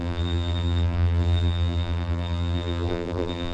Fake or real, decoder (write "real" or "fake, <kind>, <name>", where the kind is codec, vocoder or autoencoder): fake, vocoder, BigVGAN v2